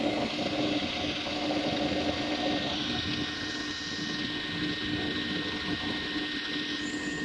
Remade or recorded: recorded